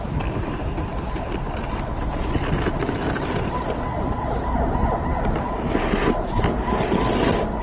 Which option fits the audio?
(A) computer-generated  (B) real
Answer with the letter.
B